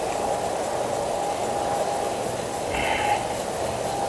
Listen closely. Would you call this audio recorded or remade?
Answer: recorded